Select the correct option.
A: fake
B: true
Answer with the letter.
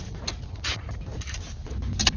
B